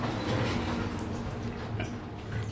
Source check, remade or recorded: recorded